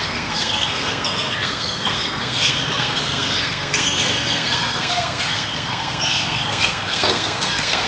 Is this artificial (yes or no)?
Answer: yes